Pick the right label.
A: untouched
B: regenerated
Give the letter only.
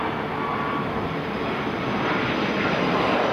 A